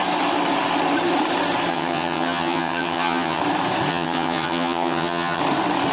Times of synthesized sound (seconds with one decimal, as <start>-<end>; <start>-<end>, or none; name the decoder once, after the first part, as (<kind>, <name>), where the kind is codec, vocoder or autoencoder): 1.7-3.4 (vocoder, HiFi-GAN); 3.9-5.4